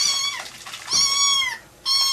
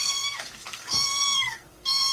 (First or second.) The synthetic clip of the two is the second